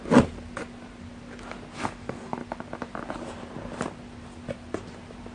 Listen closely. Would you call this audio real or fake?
real